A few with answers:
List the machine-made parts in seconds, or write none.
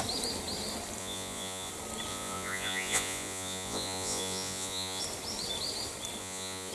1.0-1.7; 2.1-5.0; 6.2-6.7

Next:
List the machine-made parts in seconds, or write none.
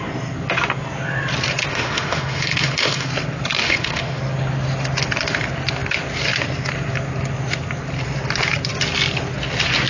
1.7-3.1; 3.6-4.2